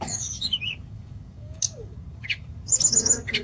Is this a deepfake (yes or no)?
yes